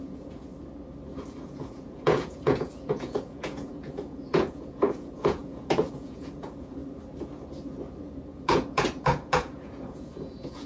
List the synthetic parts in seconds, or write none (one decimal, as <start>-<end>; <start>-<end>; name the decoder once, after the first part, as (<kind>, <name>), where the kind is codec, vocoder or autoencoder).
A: 0.0-0.5 (vocoder, Vocos); 1.4-6.8; 8.0-10.7